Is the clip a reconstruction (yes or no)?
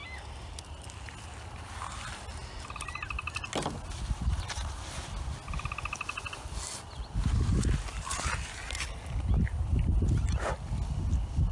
no